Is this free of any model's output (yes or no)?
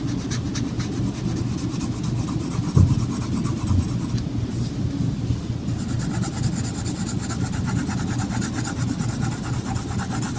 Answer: yes